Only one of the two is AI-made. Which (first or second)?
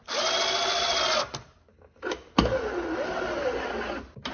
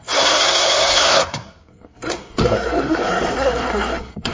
second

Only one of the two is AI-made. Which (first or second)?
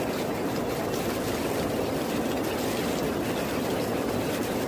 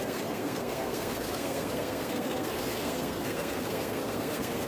second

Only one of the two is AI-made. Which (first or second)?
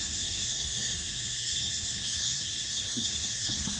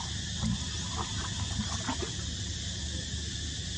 first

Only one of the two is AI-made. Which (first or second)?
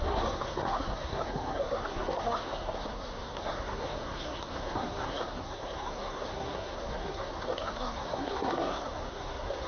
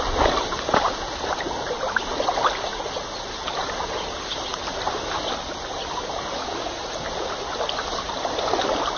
first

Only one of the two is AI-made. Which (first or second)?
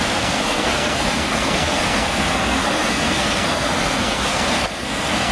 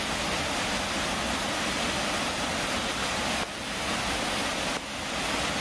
first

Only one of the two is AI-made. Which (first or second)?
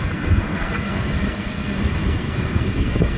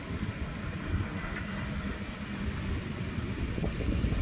first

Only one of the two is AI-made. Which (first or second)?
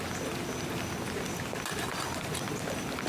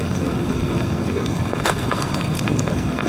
second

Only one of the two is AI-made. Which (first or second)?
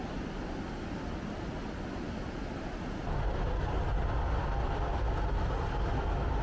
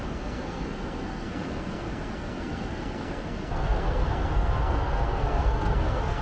second